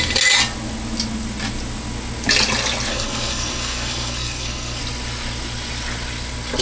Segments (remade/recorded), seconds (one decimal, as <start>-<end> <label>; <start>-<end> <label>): 0.0-2.9 recorded; 2.9-4.8 remade; 4.8-6.6 recorded